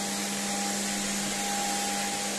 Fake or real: real